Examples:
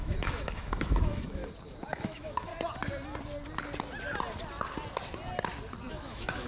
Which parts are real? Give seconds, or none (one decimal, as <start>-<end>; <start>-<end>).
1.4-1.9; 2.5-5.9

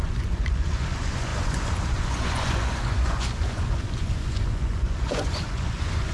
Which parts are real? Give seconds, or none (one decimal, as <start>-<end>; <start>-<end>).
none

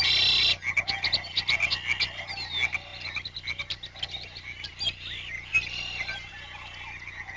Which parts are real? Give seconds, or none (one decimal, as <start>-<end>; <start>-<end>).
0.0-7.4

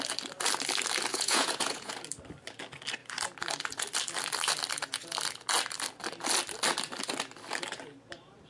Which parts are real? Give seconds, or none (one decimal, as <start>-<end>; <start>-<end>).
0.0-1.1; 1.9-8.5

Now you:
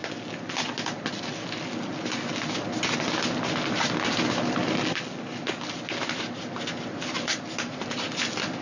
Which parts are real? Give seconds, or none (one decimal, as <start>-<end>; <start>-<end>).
0.0-8.6

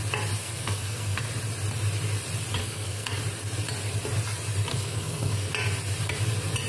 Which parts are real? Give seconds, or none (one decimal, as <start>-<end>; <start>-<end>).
0.0-0.4; 1.3-2.6; 3.2-4.7; 5.5-6.7

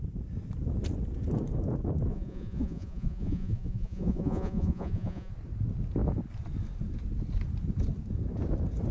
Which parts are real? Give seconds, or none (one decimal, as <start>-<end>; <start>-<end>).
0.0-2.1; 5.3-8.9

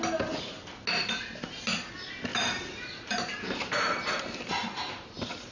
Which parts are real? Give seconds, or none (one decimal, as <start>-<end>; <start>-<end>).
0.0-2.3